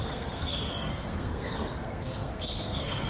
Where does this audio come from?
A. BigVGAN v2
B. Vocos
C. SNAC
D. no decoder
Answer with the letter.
C